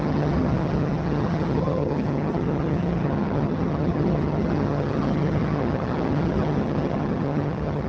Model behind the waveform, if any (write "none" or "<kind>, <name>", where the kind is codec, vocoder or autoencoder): vocoder, HiFi-GAN